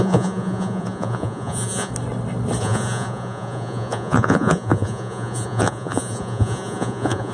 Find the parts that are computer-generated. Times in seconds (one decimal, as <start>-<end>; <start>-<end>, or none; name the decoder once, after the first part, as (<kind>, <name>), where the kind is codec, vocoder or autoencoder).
0.0-1.9 (vocoder, Vocos); 2.6-7.3